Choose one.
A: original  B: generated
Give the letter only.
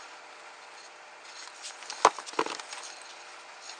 A